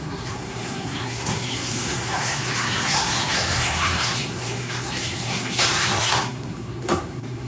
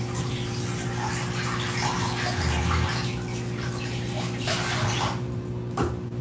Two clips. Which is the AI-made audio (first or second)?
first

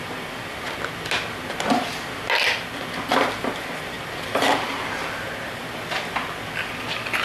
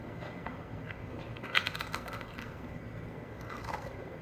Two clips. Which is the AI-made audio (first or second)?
second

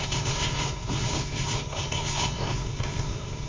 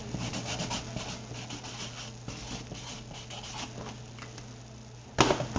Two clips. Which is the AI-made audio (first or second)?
first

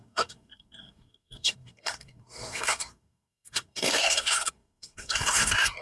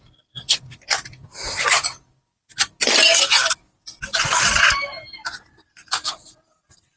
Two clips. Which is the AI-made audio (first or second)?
first